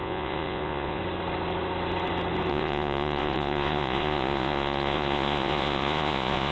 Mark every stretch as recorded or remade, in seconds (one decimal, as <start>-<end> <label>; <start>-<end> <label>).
0.0-1.0 remade; 1.0-2.5 recorded; 2.5-6.5 remade